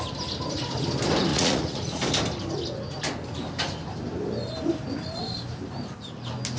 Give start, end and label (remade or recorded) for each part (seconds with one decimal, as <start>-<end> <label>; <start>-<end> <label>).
0.0-1.3 recorded; 1.3-2.0 remade; 2.0-6.6 recorded